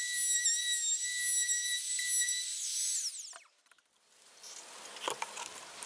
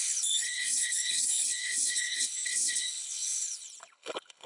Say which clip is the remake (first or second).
second